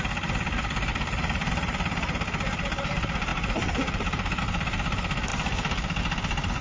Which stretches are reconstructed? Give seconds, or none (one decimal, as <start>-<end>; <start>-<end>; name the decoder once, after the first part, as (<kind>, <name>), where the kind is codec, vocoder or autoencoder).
0.9-1.5 (vocoder, BigVGAN v2); 3.3-4.4

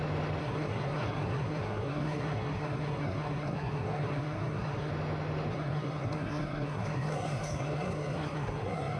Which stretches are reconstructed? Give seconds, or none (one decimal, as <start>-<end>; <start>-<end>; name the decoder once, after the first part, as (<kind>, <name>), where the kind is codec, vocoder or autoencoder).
0.4-4.9 (codec, SNAC); 5.5-9.0

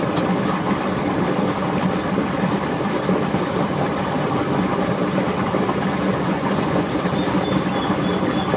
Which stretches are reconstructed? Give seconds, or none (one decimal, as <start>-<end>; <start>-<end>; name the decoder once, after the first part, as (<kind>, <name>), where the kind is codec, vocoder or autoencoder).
6.3-6.9 (vocoder, Vocos)